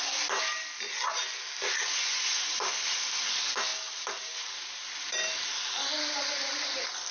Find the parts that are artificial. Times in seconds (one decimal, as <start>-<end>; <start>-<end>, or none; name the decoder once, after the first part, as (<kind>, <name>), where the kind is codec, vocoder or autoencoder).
1.8-2.6 (vocoder, Vocos)